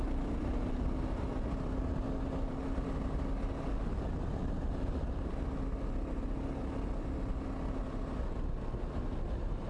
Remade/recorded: recorded